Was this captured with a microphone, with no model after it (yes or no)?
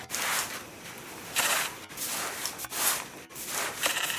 no